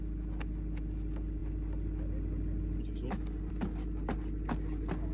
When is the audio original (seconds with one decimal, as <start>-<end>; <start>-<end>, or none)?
0.0-5.1